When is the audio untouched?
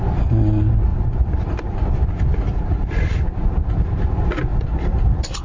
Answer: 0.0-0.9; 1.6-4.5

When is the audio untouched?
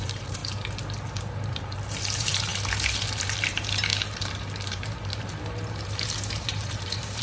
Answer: 0.4-1.2; 2.5-3.1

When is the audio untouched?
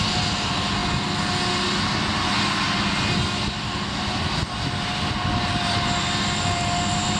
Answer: 0.0-7.2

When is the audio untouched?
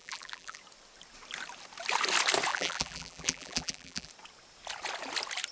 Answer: 0.6-2.5; 4.1-5.5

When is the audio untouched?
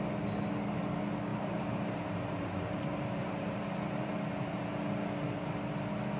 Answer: 0.0-1.3; 4.7-6.2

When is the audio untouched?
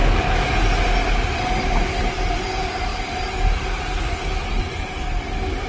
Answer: 0.0-2.1; 2.9-4.6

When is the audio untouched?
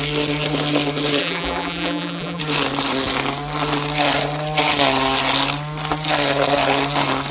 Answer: 0.0-1.2; 2.4-7.3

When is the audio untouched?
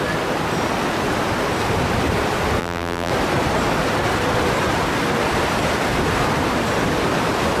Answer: 0.0-2.6; 3.1-7.6